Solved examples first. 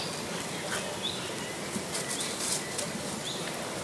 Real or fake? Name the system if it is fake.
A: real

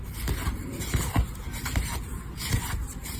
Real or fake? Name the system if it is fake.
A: fake, vocoder, BigVGAN v2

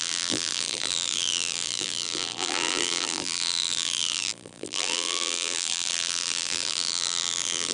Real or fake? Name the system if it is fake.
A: fake, vocoder, BigVGAN v2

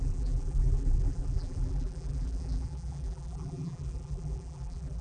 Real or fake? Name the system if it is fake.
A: fake, vocoder, BigVGAN v2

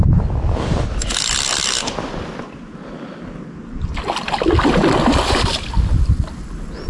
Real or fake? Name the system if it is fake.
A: real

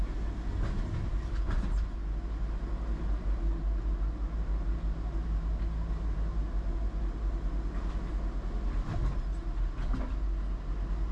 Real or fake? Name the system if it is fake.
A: real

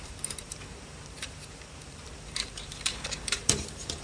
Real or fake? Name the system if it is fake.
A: fake, vocoder, BigVGAN v2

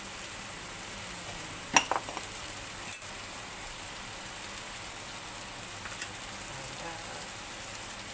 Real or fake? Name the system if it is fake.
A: real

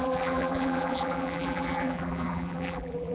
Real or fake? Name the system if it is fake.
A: fake, vocoder, BigVGAN v2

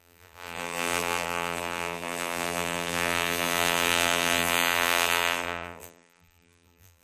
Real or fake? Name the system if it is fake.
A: fake, vocoder, BigVGAN v2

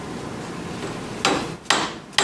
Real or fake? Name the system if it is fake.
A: real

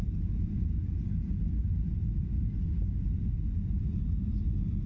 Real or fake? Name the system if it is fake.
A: real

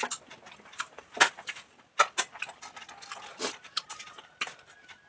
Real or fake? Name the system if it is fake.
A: real